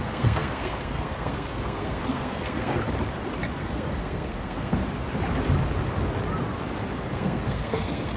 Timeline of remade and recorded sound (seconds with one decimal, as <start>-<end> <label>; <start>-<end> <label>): 0.0-2.8 remade; 2.8-3.6 recorded; 3.6-4.8 remade; 4.8-7.1 recorded; 7.1-8.2 remade

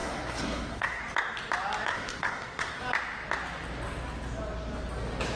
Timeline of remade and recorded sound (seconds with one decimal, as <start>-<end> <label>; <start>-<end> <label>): 0.0-1.0 remade; 1.0-1.9 recorded; 1.9-2.8 remade; 2.8-5.4 recorded

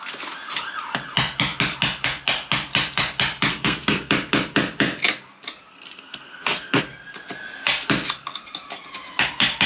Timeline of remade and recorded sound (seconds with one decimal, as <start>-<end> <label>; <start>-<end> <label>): 0.0-3.5 recorded; 3.5-4.1 remade; 4.1-5.7 recorded; 5.7-6.8 remade; 6.8-9.7 recorded